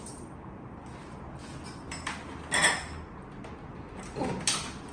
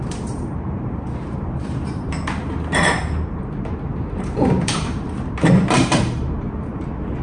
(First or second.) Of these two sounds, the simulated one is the second